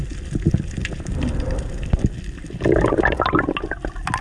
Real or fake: real